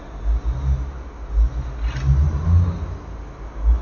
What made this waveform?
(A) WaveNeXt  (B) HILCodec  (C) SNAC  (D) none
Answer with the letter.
D